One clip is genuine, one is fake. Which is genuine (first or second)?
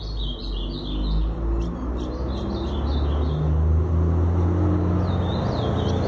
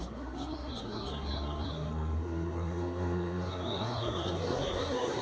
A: first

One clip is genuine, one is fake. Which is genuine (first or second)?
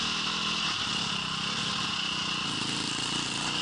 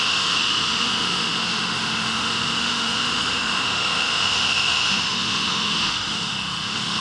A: first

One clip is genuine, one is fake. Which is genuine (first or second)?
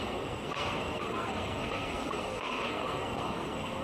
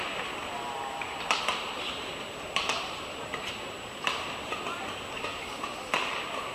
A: second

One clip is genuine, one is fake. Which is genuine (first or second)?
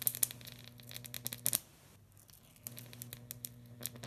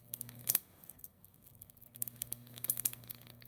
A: first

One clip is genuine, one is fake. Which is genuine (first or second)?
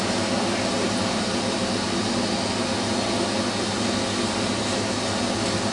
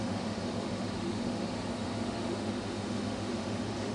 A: first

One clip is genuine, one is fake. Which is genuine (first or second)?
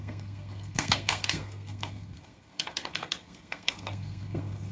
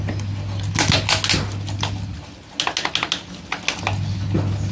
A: second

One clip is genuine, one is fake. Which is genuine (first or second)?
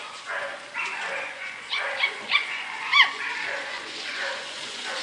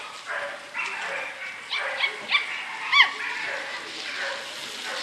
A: second